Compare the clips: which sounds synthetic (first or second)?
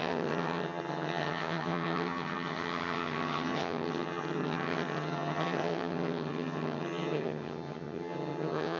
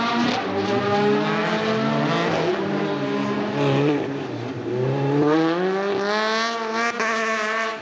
first